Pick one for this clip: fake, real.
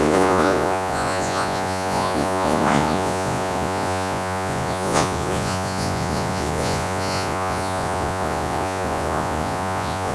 fake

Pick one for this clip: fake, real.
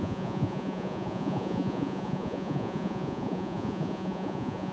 fake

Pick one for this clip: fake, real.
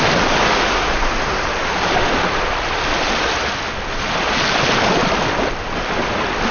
real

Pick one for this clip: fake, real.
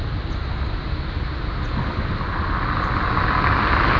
real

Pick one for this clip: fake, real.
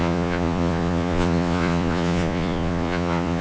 fake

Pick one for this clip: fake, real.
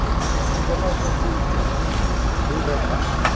real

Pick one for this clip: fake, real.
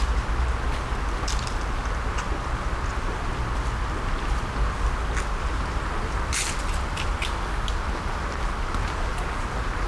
real